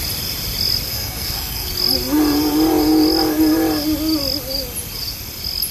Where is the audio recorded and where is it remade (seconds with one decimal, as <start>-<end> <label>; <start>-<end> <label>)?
0.0-0.9 recorded; 0.9-1.7 remade; 1.7-5.7 recorded